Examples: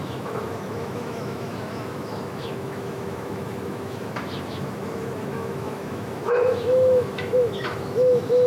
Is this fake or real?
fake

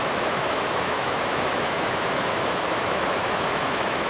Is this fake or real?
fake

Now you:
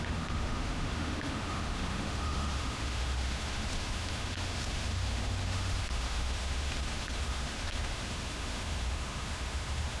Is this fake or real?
fake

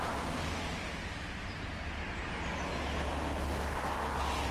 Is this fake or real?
real